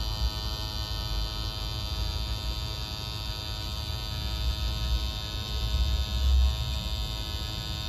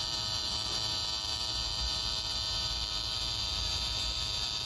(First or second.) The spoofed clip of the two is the second